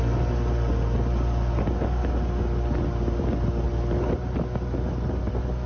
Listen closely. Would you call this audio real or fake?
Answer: real